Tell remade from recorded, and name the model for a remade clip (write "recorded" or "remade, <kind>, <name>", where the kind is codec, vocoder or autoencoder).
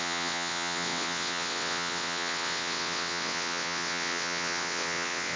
remade, vocoder, WaveNeXt